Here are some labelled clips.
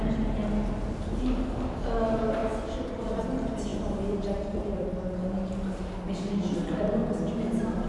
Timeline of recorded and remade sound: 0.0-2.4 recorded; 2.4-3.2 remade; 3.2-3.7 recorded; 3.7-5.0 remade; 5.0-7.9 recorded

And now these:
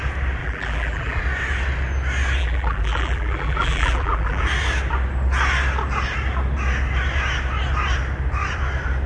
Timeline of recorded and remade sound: 0.0-0.4 recorded; 0.4-1.2 remade; 1.2-2.4 recorded; 2.4-4.4 remade; 4.4-9.1 recorded

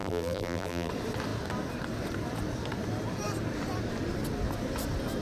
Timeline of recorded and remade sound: 0.0-0.9 remade; 0.9-5.2 recorded

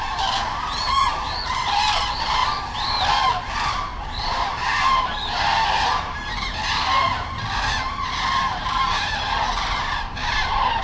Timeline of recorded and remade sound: 0.0-2.4 remade; 2.4-3.5 recorded; 3.5-10.8 remade

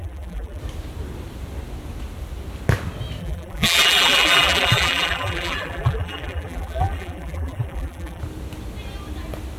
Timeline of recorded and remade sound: 0.0-0.6 remade; 0.6-3.2 recorded; 3.2-8.2 remade; 8.2-9.6 recorded

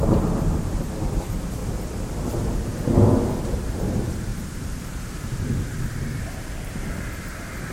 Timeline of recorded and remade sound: 0.0-1.6 remade; 1.6-3.3 recorded; 3.3-7.7 remade

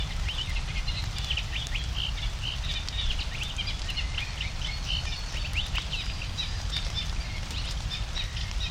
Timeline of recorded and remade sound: 0.0-5.5 recorded; 5.5-6.8 remade; 6.8-8.7 recorded